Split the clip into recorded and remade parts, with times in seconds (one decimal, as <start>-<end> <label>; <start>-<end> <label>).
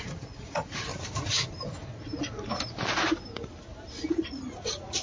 0.0-0.9 remade; 0.9-3.9 recorded; 3.9-5.0 remade